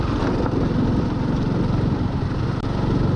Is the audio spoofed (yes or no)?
no